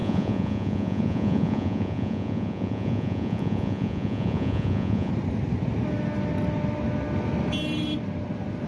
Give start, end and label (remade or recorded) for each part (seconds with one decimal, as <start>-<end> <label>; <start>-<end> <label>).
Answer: 0.0-5.1 remade; 5.1-8.7 recorded